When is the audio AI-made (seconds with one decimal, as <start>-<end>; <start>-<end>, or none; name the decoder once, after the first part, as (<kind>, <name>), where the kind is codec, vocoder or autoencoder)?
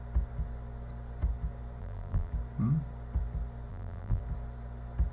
1.8-2.3 (vocoder, BigVGAN v2); 3.7-4.2